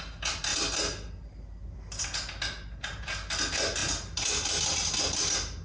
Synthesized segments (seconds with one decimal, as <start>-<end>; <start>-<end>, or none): none